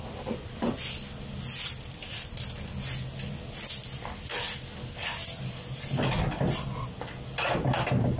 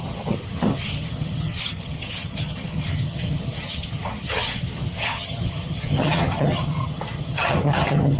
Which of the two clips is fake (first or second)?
second